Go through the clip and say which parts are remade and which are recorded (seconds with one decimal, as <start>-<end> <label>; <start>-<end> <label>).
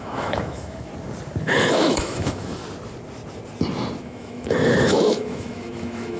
0.0-0.9 remade; 0.9-1.4 recorded; 1.4-2.6 remade; 2.6-4.0 recorded; 4.0-6.2 remade